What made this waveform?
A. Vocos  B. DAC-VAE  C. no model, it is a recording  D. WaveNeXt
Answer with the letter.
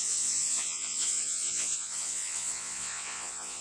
A